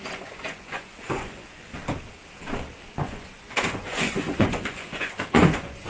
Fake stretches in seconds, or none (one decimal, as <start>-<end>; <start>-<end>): 0.0-1.7; 2.9-5.9